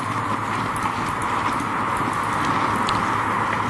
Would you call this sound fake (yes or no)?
no